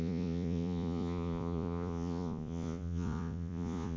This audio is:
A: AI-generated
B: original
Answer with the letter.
A